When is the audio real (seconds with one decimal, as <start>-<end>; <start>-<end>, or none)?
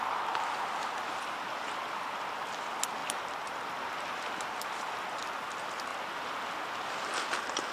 0.0-7.7